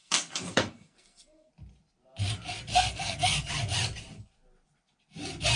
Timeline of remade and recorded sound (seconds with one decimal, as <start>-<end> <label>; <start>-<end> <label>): 0.0-1.5 remade; 1.5-2.7 recorded; 2.7-3.5 remade; 3.5-5.6 recorded